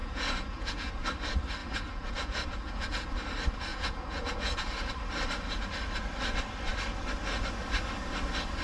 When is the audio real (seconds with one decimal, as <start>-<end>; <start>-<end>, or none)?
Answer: 0.9-1.6; 3.1-3.7; 4.9-8.6